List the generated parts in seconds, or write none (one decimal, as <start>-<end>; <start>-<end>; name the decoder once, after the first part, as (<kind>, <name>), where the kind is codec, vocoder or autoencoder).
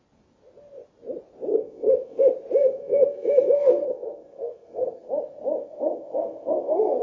1.5-2.2 (codec, SNAC); 2.6-5.1; 5.6-7.0